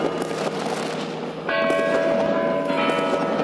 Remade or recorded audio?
recorded